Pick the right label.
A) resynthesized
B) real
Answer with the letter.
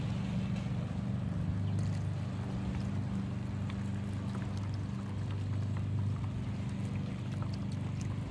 B